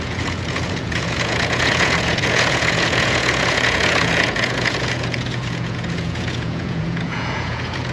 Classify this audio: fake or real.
fake